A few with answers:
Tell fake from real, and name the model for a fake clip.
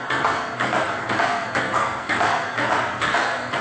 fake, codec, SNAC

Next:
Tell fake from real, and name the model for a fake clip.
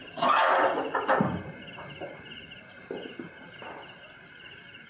real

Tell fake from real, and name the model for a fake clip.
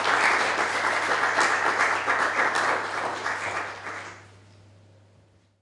real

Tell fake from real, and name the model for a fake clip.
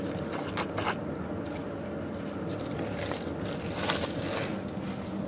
real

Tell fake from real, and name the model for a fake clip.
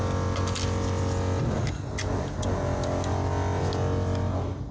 real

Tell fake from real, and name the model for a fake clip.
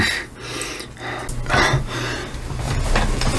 real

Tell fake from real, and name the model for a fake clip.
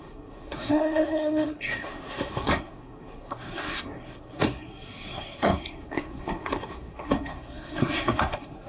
fake, codec, SNAC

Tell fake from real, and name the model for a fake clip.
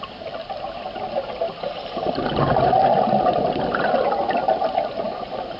real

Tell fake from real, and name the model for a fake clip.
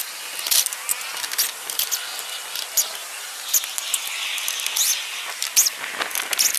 real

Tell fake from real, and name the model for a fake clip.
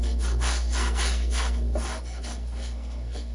fake, codec, SNAC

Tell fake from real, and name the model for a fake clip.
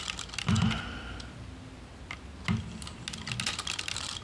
real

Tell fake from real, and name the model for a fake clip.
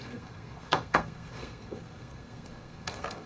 fake, codec, SNAC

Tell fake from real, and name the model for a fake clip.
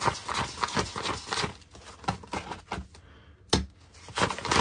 real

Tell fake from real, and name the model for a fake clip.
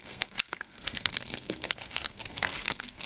fake, codec, SNAC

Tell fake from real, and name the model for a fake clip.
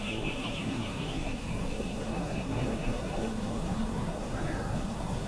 fake, codec, SNAC